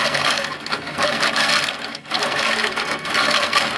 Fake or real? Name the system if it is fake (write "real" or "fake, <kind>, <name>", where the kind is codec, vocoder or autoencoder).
fake, codec, SNAC